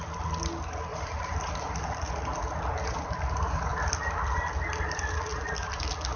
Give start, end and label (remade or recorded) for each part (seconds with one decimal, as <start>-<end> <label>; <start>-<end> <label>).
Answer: 0.0-6.2 recorded